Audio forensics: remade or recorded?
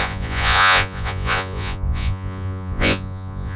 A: remade